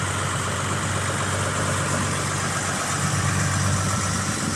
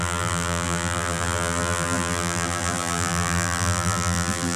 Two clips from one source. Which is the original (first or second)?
first